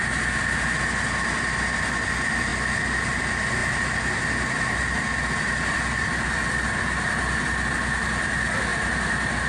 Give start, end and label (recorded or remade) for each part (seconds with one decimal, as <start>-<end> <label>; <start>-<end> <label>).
0.0-9.5 recorded